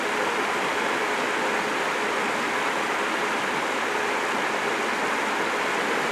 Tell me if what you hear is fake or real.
real